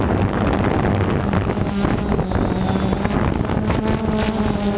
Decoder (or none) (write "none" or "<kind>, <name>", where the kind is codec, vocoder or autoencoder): none